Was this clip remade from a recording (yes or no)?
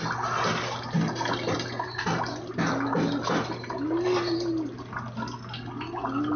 no